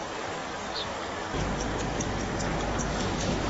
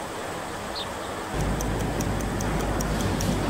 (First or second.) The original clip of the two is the second